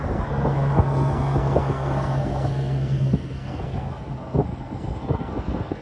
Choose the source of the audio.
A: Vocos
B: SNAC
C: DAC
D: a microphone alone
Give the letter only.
B